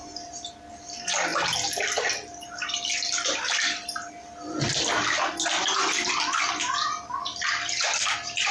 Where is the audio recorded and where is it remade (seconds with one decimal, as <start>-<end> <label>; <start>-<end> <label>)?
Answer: 0.0-8.5 recorded